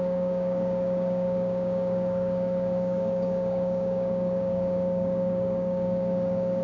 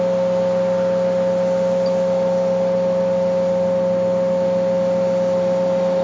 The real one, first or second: second